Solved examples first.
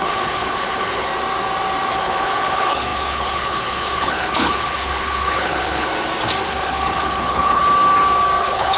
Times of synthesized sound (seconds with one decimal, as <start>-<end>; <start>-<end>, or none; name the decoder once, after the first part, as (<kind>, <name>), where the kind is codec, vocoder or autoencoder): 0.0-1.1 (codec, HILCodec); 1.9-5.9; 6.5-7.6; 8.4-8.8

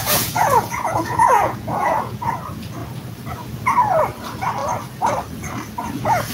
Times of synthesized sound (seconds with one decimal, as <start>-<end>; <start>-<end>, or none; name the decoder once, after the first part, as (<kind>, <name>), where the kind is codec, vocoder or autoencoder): 0.0-2.3 (vocoder, Vocos)

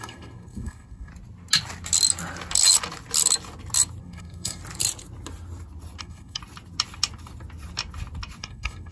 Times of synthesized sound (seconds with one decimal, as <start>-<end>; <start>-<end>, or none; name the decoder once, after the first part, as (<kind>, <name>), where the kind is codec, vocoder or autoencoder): 0.0-1.1 (codec, SNAC); 4.0-4.6; 6.0-6.4; 8.4-8.9

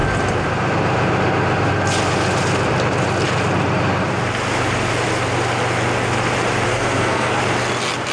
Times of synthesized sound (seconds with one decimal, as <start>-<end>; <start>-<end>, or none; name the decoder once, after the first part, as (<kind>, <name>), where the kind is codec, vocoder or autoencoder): 6.7-7.4 (codec, SNAC)

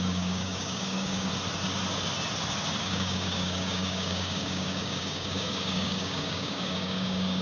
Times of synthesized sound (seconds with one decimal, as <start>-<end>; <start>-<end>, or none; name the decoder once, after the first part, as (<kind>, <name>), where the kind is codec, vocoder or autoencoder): 0.0-1.3 (codec, DAC); 2.8-7.4